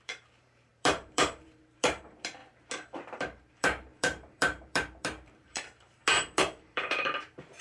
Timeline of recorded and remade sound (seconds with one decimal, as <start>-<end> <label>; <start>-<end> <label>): 0.0-2.4 remade; 2.4-3.1 recorded; 3.1-7.6 remade